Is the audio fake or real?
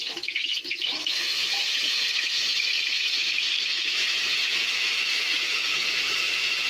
fake